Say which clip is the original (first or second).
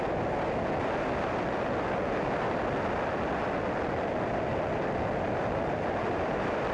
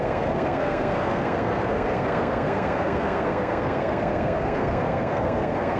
first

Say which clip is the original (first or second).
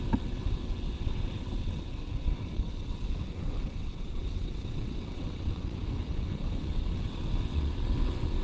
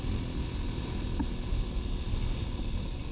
second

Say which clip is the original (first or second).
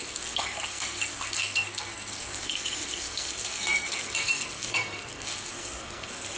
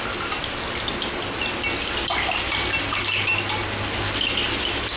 second